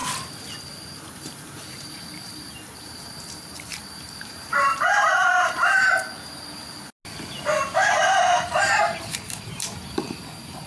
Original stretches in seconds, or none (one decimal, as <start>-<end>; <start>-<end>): 0.0-1.1; 5.9-7.9